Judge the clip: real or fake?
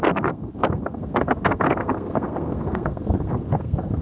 fake